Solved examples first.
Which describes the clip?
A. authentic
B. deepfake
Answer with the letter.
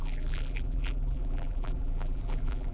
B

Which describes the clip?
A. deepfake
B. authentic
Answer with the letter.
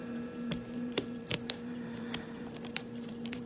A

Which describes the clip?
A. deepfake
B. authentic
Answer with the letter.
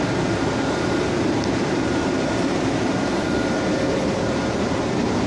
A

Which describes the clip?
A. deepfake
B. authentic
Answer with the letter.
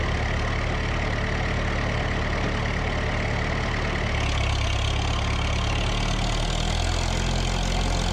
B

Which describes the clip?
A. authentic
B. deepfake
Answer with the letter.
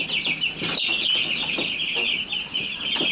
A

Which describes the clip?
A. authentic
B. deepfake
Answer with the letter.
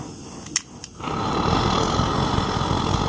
A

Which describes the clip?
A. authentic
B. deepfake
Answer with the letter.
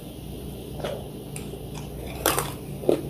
B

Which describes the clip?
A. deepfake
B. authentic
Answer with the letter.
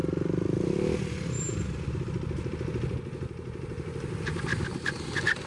A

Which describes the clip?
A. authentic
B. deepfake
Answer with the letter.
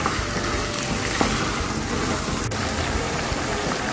A